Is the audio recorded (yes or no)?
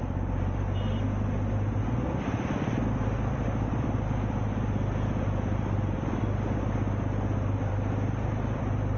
no